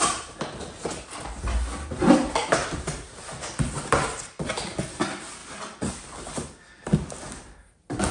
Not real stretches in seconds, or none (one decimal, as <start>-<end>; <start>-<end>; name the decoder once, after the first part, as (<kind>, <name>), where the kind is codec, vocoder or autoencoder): 2.6-4.6 (vocoder, BigVGAN v2)